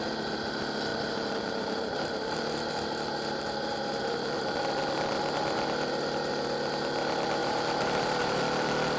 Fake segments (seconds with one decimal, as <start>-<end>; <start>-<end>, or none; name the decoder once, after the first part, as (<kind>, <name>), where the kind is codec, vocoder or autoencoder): 0.9-4.6 (vocoder, BigVGAN v2); 7.4-8.4